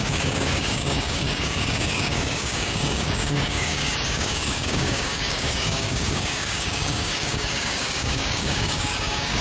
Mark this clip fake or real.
fake